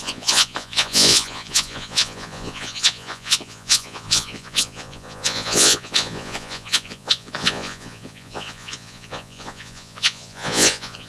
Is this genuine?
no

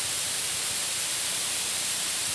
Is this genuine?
yes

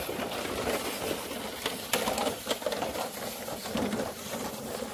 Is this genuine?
yes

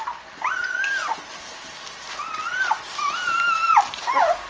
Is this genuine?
yes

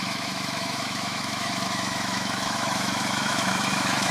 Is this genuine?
no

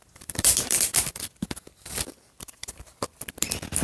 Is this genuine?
no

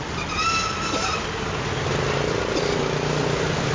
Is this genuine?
yes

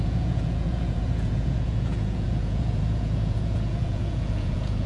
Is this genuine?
no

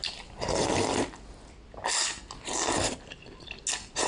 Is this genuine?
yes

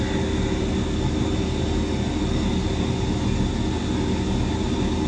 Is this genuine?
yes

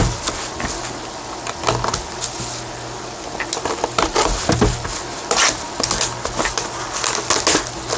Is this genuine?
yes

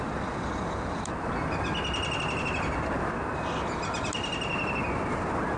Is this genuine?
yes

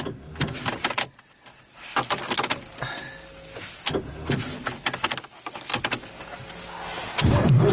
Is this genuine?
yes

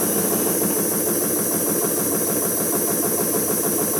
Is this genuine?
yes